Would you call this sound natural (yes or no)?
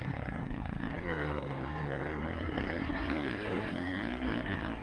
no